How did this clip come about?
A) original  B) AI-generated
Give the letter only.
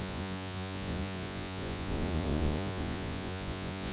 B